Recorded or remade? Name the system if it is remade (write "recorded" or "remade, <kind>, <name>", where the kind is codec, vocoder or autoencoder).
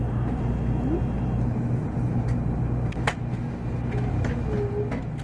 recorded